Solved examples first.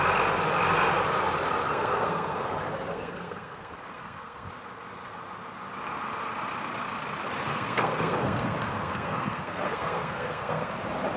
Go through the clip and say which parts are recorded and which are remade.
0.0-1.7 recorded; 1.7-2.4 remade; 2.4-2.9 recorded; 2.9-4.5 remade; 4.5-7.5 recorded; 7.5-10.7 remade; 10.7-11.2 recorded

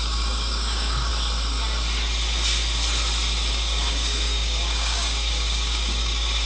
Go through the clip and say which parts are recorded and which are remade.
0.0-1.1 remade; 1.1-3.5 recorded; 3.5-6.5 remade